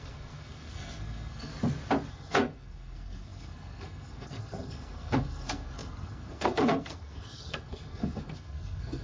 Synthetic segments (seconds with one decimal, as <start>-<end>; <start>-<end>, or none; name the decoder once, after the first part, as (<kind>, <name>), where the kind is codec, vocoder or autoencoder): 0.0-1.5 (codec, SNAC); 2.1-9.0